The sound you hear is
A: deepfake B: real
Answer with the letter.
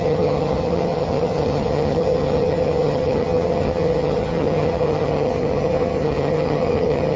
A